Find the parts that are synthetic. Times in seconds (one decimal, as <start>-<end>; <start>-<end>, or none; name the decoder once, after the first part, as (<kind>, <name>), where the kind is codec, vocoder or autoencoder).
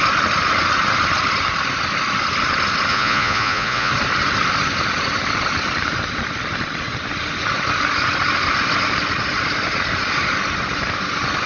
2.9-3.9 (vocoder, Vocos)